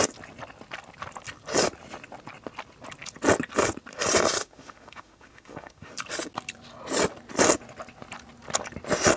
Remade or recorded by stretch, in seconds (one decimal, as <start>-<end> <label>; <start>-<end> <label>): 0.0-4.4 recorded; 4.4-5.9 remade; 5.9-9.2 recorded